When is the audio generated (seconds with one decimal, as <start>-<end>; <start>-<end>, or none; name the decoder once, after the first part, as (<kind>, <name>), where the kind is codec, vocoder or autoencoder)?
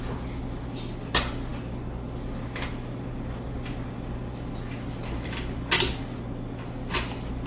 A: none